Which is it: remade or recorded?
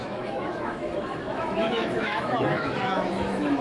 remade